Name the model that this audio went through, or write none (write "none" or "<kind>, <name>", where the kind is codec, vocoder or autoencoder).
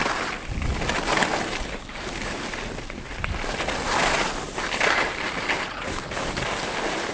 none